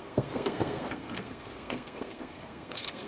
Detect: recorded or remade remade